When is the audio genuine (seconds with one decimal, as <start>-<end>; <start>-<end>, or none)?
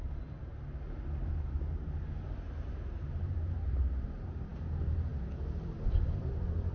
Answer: 0.5-1.2